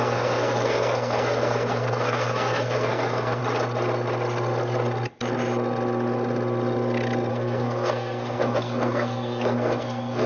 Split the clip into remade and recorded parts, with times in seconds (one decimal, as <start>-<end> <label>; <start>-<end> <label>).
0.0-3.4 remade; 3.4-7.3 recorded; 7.3-10.3 remade